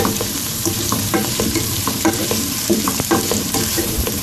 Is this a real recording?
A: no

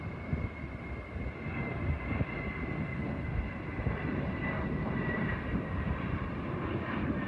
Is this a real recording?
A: yes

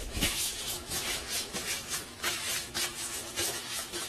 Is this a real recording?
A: no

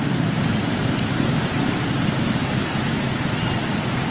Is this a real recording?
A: no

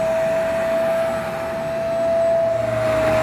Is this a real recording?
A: yes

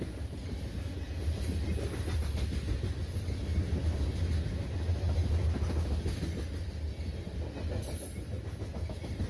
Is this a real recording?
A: yes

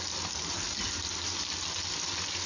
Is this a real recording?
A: yes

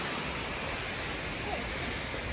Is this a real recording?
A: yes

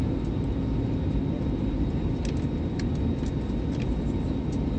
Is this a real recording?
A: yes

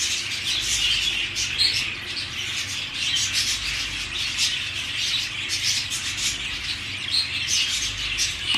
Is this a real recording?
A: yes